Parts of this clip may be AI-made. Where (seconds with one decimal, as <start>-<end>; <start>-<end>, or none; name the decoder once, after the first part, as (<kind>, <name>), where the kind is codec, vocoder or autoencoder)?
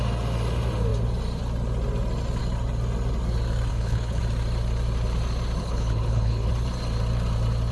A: 3.7-4.2 (codec, HILCodec); 5.6-6.5